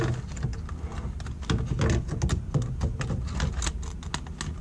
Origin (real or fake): real